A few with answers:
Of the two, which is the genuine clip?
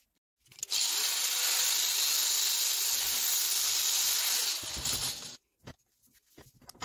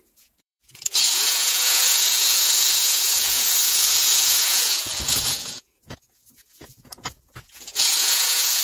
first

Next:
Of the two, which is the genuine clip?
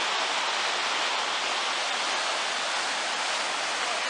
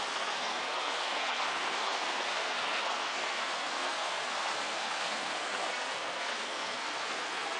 first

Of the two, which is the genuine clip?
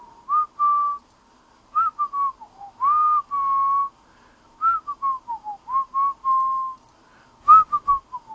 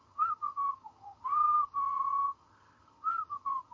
first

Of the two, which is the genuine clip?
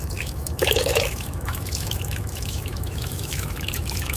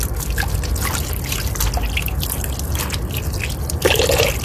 second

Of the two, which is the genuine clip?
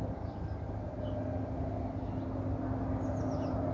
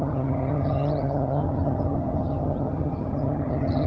first